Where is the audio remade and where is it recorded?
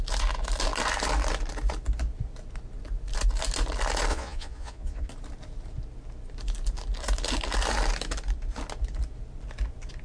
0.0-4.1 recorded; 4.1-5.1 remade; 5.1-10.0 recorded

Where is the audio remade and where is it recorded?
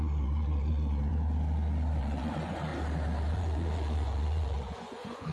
0.0-1.1 remade; 1.1-2.0 recorded; 2.0-2.7 remade; 2.7-3.3 recorded; 3.3-5.3 remade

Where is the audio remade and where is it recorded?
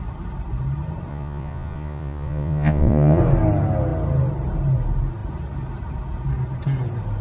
0.0-1.1 recorded; 1.1-3.2 remade; 3.2-7.2 recorded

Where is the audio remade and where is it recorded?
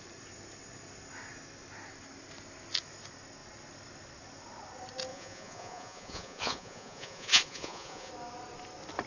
0.0-5.1 recorded; 5.1-8.1 remade; 8.1-9.1 recorded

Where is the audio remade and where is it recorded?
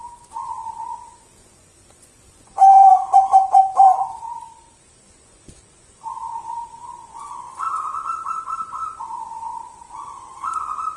0.0-11.0 remade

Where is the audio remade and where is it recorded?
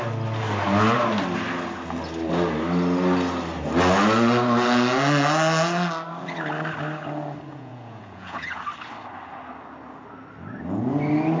0.0-7.5 recorded; 7.5-8.6 remade; 8.6-11.4 recorded